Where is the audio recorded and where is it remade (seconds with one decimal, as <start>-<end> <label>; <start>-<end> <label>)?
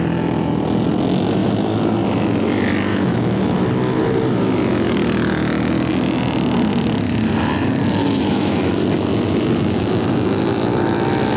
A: 0.0-2.9 recorded; 2.9-3.6 remade; 3.6-8.0 recorded; 8.0-8.7 remade; 8.7-11.4 recorded